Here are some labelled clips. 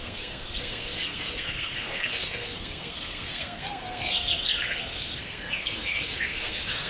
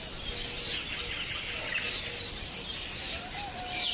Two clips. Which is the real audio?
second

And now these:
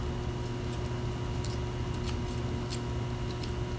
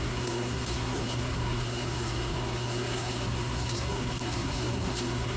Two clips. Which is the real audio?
first